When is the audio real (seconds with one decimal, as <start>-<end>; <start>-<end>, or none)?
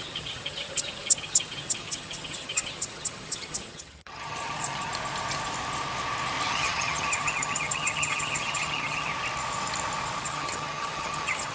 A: 4.9-6.5; 9.1-10.2